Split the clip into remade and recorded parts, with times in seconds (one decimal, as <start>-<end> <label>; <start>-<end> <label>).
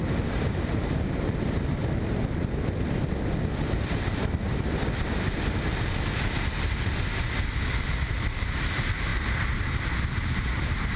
0.0-11.0 recorded